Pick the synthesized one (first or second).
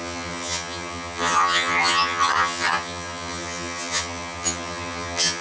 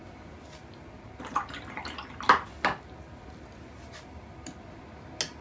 first